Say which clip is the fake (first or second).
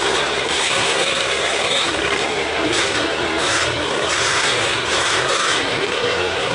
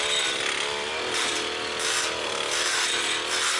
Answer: first